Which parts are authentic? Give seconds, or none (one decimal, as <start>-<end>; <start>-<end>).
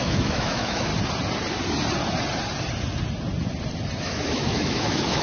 0.9-4.0